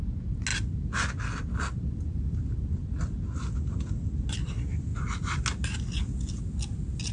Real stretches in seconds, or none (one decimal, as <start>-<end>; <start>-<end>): 0.0-7.1